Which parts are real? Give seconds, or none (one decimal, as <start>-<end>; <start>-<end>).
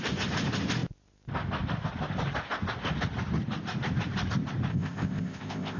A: 0.0-4.7